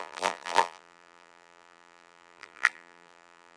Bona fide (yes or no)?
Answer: no